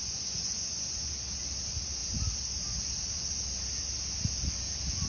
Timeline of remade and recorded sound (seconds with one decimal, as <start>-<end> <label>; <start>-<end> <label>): 0.0-1.1 remade; 1.1-5.1 recorded